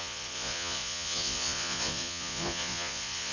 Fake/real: fake